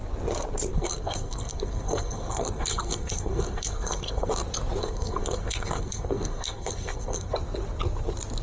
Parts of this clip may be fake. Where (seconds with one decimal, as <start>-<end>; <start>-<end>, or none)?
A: 0.7-4.3; 4.8-7.3